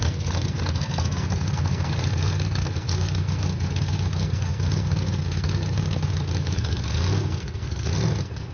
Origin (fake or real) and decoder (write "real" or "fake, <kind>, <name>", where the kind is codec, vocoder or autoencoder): fake, codec, SNAC